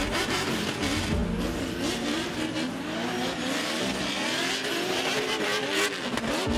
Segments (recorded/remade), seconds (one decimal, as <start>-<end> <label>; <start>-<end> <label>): 0.0-6.6 recorded